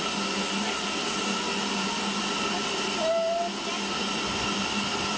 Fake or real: real